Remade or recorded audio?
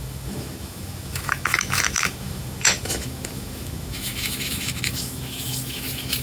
remade